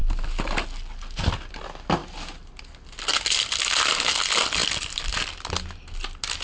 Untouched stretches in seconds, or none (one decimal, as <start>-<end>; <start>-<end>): 0.0-6.4